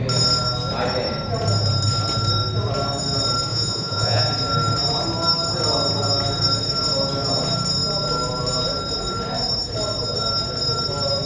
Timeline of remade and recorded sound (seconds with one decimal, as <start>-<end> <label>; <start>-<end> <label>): 0.0-3.5 recorded; 3.5-4.2 remade; 4.2-11.3 recorded